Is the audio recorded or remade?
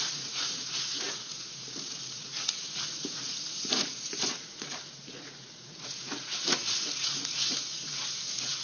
remade